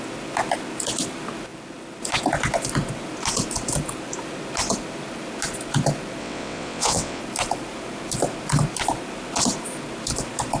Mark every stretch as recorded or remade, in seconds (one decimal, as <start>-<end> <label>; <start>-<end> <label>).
0.0-6.2 recorded; 6.2-7.2 remade; 7.2-10.6 recorded